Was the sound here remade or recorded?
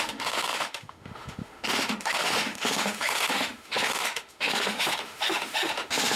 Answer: remade